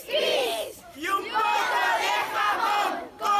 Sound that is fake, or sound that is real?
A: fake